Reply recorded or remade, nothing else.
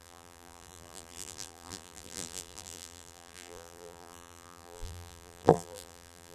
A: remade